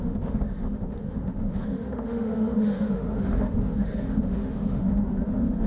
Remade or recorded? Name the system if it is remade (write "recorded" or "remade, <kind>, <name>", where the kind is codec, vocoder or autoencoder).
remade, autoencoder, DAC-VAE